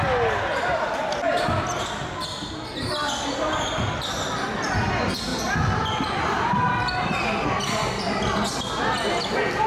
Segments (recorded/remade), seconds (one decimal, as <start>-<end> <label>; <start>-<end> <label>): 0.0-9.7 recorded